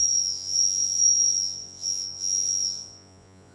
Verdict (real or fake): fake